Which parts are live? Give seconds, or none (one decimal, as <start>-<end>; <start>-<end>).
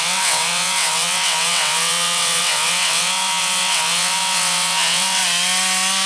5.2-6.1